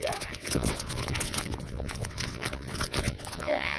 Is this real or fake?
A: fake